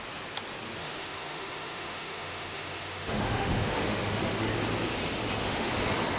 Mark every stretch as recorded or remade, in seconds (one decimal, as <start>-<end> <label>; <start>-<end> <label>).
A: 0.0-0.8 recorded; 0.8-4.5 remade; 4.5-5.2 recorded; 5.2-5.7 remade; 5.7-6.2 recorded